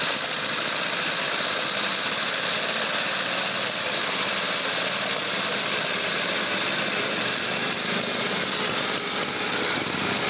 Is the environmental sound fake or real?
real